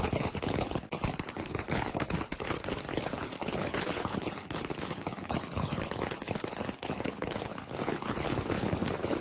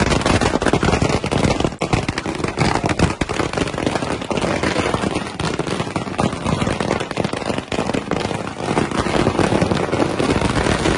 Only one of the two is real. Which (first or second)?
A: second